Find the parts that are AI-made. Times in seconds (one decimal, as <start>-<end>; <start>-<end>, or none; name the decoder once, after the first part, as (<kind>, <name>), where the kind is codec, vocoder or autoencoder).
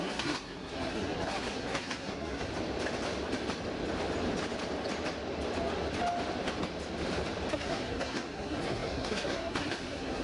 0.0-2.5 (codec, SNAC); 7.5-10.2